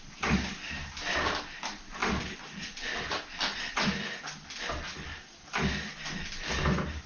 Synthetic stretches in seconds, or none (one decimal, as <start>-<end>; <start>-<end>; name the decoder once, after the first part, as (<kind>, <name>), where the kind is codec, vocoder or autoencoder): none